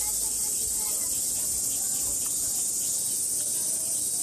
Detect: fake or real real